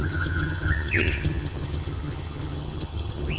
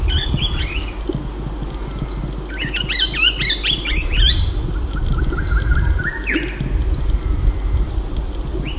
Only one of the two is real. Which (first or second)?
second